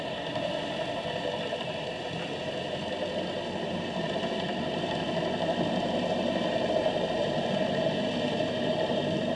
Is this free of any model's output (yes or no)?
no